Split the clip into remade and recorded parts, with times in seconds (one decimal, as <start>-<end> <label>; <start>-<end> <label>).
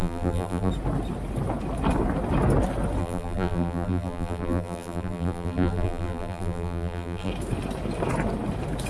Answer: 0.0-0.7 remade; 0.7-3.0 recorded; 3.0-7.3 remade; 7.3-8.9 recorded